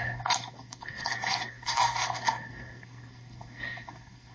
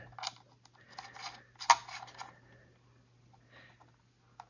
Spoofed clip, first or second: first